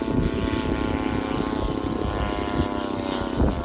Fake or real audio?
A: real